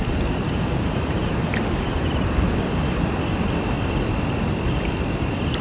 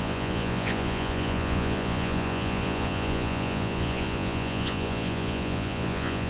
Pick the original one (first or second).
first